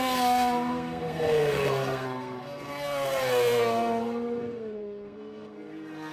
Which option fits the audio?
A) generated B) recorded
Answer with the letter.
A